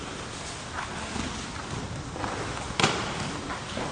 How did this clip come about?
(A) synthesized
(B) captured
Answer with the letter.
B